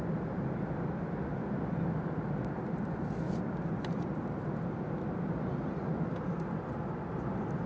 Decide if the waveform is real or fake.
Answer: real